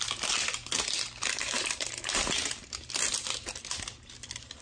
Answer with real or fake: real